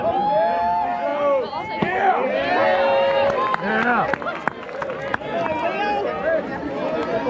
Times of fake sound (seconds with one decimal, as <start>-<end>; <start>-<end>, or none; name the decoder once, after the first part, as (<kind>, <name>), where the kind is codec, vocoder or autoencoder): none